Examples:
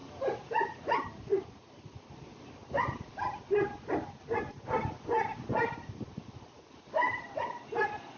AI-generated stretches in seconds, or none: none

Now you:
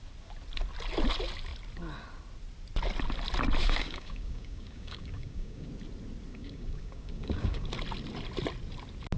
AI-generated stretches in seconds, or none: 3.6-5.7; 6.3-7.7

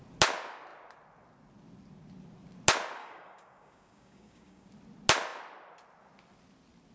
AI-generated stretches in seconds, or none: 3.0-4.7

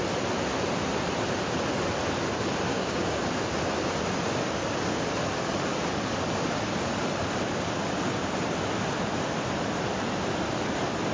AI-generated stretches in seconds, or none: 2.7-3.2

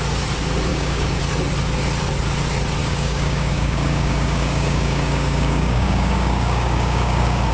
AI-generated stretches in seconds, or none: 0.7-1.2; 2.8-7.5

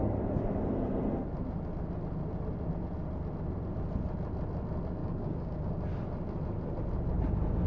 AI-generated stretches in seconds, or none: 5.0-5.7

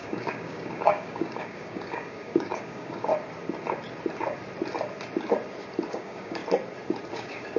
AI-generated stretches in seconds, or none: 0.0-3.1; 5.9-6.4; 7.1-7.6